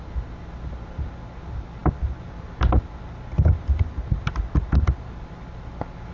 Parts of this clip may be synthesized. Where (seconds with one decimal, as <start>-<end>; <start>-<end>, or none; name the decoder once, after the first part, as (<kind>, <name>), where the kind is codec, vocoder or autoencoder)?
none